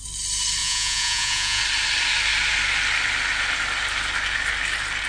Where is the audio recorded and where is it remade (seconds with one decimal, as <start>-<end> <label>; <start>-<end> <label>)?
0.0-0.6 recorded; 0.6-1.6 remade; 1.6-5.1 recorded